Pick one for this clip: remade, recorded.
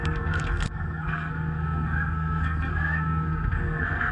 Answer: remade